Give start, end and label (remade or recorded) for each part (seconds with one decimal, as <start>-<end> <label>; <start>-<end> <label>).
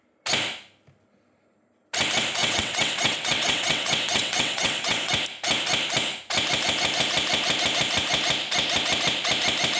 0.0-2.4 recorded; 2.4-5.1 remade; 5.1-9.8 recorded